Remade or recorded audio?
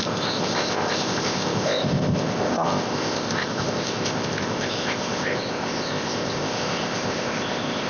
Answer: remade